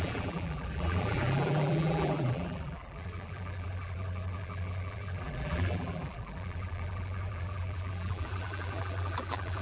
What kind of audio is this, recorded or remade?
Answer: remade